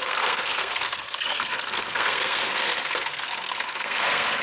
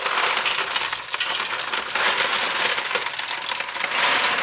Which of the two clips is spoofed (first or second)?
first